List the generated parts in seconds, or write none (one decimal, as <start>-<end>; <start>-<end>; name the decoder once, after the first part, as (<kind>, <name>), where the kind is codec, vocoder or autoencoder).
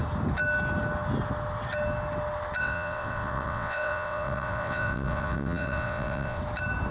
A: 2.6-6.4 (vocoder, WaveNeXt)